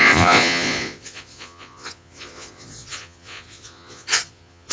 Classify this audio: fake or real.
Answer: fake